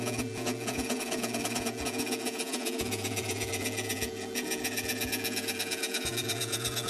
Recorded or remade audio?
remade